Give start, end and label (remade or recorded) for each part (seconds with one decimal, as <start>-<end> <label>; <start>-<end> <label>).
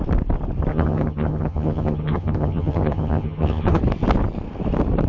0.0-0.7 recorded; 0.7-3.8 remade; 3.8-5.1 recorded